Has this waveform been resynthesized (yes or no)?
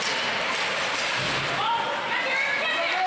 no